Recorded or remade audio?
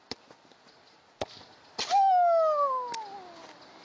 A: recorded